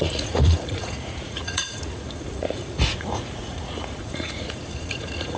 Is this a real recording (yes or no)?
no